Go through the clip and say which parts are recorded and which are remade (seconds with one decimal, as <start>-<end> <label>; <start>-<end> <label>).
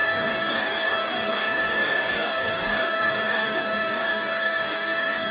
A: 0.0-5.3 remade